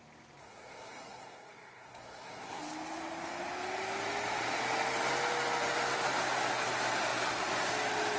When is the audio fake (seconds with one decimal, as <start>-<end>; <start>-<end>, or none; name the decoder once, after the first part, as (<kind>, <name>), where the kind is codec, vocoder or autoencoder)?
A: 0.4-2.6 (codec, SNAC)